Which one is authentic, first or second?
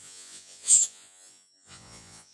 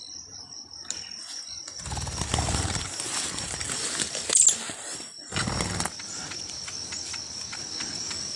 second